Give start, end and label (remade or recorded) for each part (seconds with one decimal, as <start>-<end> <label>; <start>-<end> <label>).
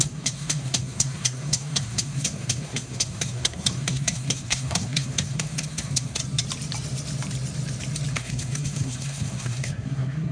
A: 0.0-6.2 remade; 6.2-8.1 recorded; 8.1-10.3 remade